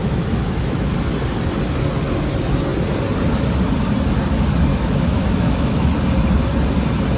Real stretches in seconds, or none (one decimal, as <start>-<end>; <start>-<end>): 0.9-4.7; 5.9-7.2